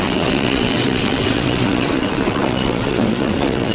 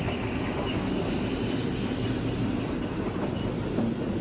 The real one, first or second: second